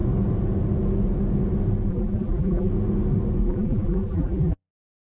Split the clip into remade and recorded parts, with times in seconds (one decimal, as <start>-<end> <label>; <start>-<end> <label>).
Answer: 0.0-1.9 recorded; 1.9-2.7 remade; 2.7-3.4 recorded; 3.4-4.7 remade; 4.7-5.2 recorded